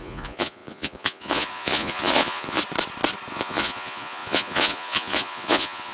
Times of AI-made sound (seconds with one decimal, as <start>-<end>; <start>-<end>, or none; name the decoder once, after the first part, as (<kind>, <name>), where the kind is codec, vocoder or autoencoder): 0.0-2.6 (vocoder, Vocos); 3.3-5.9